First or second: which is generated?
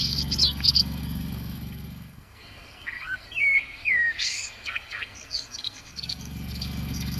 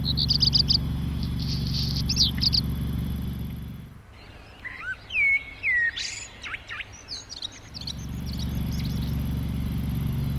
first